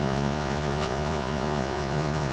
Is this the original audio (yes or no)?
no